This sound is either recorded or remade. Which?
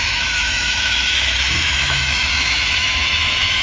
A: remade